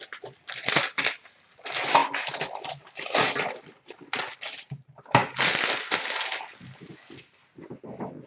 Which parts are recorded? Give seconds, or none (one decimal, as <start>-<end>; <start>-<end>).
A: 0.0-8.3